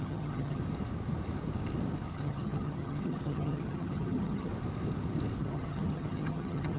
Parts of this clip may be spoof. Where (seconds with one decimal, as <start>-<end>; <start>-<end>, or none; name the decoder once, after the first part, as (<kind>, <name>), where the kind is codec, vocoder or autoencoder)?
0.0-0.6 (vocoder, HiFi-GAN); 2.1-4.5; 5.4-6.8